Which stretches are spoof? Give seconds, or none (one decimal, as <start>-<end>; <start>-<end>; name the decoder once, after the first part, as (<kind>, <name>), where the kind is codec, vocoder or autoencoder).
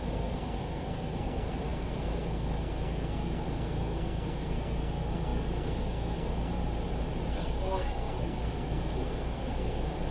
0.0-6.6 (codec, SNAC); 7.3-10.1